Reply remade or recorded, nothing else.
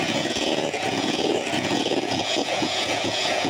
remade